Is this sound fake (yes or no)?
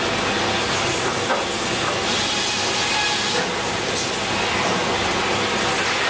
no